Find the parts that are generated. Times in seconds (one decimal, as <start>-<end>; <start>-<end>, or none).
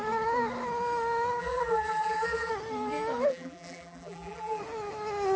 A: 1.4-2.5; 3.3-4.6